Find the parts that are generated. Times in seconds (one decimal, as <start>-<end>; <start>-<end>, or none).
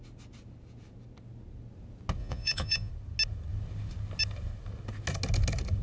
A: 2.2-2.9